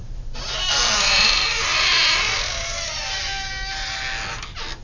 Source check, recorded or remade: recorded